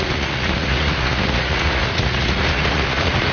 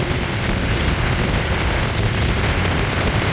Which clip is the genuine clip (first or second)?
second